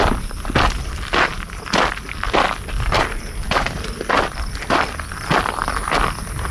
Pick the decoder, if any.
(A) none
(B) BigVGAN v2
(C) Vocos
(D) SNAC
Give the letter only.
A